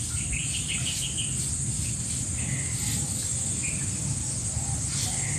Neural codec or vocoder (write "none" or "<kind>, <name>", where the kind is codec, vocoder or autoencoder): none